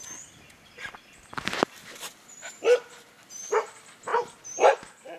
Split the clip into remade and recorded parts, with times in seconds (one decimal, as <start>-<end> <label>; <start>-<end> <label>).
0.0-5.2 recorded